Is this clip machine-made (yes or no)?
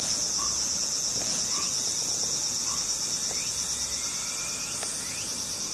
no